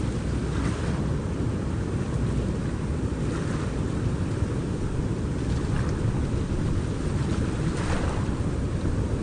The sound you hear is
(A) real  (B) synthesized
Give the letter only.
B